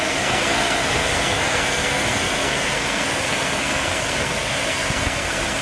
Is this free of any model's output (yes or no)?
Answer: no